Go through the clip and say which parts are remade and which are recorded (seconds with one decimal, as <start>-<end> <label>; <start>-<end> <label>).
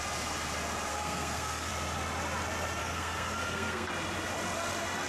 0.0-0.9 recorded; 0.9-1.7 remade; 1.7-2.8 recorded; 2.8-3.9 remade; 3.9-5.1 recorded